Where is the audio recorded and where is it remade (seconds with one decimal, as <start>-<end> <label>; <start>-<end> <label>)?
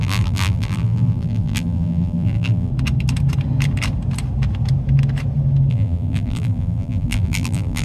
0.0-2.7 remade; 2.7-5.7 recorded; 5.7-7.8 remade